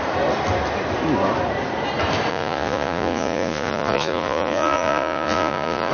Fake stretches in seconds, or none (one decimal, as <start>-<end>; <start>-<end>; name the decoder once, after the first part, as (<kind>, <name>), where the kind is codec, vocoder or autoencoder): 2.3-5.9 (vocoder, Vocos)

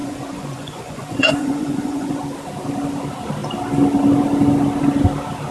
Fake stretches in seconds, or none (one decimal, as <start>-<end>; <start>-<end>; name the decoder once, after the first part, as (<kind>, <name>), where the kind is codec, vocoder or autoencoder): 0.0-2.2 (vocoder, Vocos)

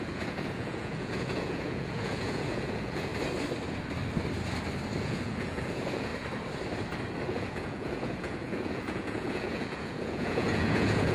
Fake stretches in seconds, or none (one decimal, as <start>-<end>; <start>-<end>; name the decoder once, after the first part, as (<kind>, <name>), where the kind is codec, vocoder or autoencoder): 0.0-3.1 (vocoder, Vocos); 5.0-6.1; 7.3-11.1

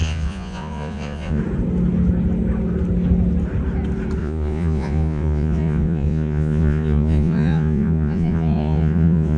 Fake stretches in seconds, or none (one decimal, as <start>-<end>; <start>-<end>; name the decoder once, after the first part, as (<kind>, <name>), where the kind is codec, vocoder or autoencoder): 0.0-1.4 (vocoder, Vocos); 4.2-9.4

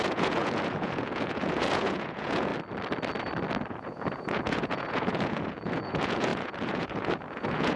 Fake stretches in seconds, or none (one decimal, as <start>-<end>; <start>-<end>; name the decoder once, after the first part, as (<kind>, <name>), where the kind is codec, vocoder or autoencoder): 0.0-2.5 (vocoder, Vocos); 3.7-7.8